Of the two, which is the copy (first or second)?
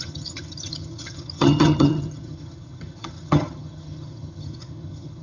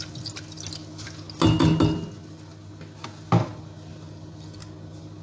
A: first